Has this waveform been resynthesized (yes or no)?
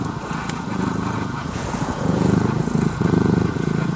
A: yes